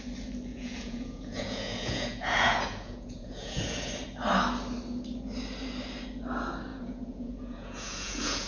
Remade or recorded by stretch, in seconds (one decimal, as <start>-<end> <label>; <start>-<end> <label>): 0.0-0.5 recorded; 0.5-3.9 remade; 3.9-6.7 recorded; 6.7-8.5 remade